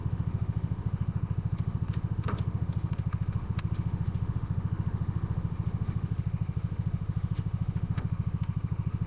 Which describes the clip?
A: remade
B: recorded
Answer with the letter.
A